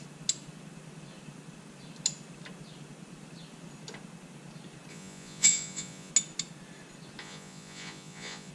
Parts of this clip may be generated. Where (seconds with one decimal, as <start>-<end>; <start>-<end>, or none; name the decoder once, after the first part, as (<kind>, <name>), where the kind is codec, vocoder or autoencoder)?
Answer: 4.9-6.1 (vocoder, Vocos); 7.2-8.5